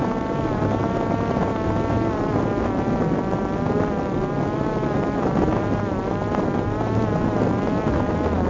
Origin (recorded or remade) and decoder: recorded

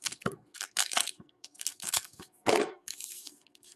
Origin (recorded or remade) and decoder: remade, codec, SNAC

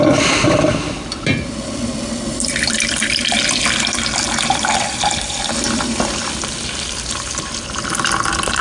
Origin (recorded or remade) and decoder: remade, vocoder, BigVGAN v2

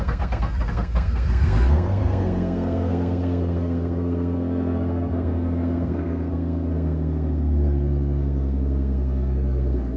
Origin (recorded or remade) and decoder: remade, codec, SNAC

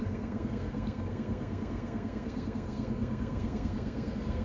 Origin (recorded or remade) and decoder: remade, codec, SNAC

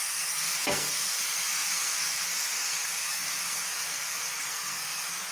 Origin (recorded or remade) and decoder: remade, codec, SNAC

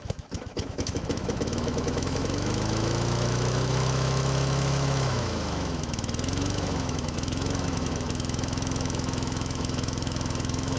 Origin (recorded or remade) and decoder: remade, autoencoder, DAC-VAE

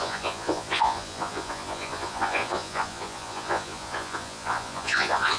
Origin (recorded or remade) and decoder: remade, vocoder, Vocos